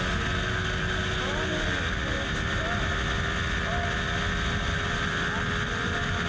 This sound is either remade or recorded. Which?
recorded